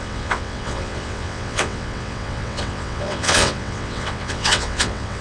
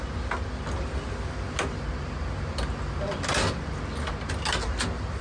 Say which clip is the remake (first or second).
first